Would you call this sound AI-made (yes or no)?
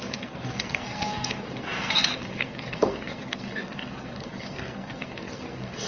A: yes